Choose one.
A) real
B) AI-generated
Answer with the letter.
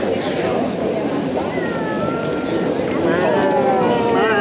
A